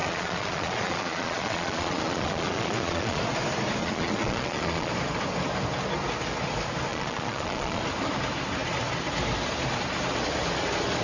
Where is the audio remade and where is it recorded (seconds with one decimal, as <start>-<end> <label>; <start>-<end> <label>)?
0.0-3.2 remade; 3.2-3.8 recorded; 3.8-4.9 remade; 4.9-6.9 recorded; 6.9-7.8 remade; 7.8-11.0 recorded